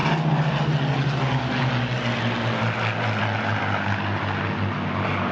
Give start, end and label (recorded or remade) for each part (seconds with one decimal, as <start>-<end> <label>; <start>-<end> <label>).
0.0-5.3 recorded